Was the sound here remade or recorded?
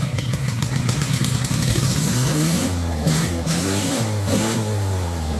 remade